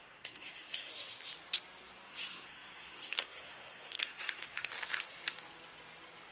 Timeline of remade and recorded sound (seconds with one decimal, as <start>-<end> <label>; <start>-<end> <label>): 0.0-0.9 remade; 0.9-2.1 recorded; 2.1-4.7 remade; 4.7-6.3 recorded